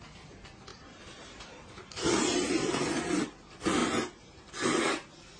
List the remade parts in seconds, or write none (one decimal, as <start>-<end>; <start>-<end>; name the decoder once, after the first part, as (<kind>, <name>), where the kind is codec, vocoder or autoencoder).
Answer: 0.7-1.9 (vocoder, BigVGAN v2); 3.8-4.5